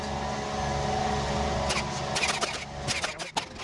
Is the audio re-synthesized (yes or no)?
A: no